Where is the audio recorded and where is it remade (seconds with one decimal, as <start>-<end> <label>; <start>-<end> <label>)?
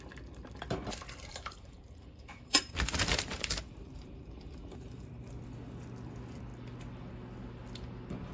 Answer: 0.0-1.3 recorded; 1.3-5.1 remade; 5.1-8.3 recorded